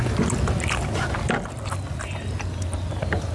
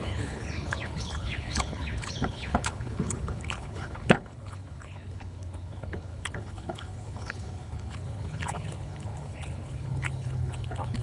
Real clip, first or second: first